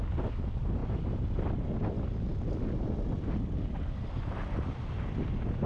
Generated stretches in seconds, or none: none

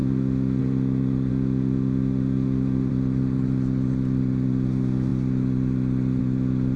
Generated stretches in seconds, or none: 0.0-0.6 (autoencoder, DAC-VAE); 1.3-2.9

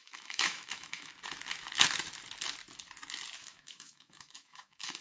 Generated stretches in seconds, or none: 0.0-1.1 (autoencoder, DAC-VAE); 3.4-5.0

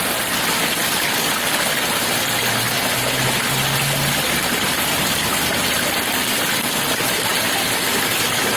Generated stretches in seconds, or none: none

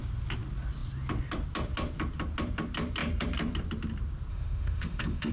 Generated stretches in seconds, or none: 4.3-5.3 (autoencoder, DAC-VAE)

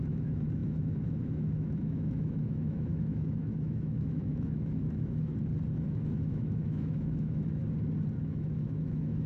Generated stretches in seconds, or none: 0.0-5.3 (autoencoder, DAC-VAE); 5.8-7.6; 8.2-9.3

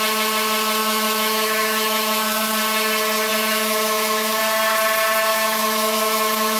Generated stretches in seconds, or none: 0.8-2.5 (autoencoder, DAC-VAE); 3.3-4.4; 5.3-6.6

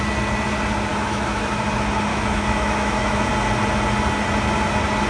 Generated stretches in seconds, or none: 0.9-1.5 (autoencoder, DAC-VAE); 2.1-3.3